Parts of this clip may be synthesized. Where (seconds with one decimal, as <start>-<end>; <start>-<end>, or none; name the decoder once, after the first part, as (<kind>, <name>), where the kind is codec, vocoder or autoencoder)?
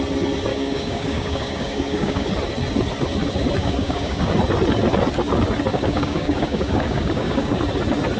0.5-2.3 (codec, DAC); 3.6-4.3; 5.7-7.6